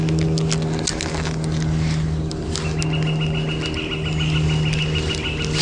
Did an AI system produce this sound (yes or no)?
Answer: no